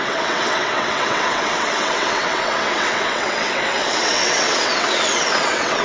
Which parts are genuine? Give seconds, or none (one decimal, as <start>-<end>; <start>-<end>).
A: none